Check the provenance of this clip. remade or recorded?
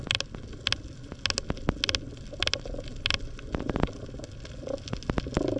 recorded